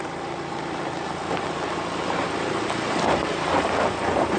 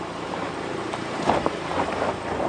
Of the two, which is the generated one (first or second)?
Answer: second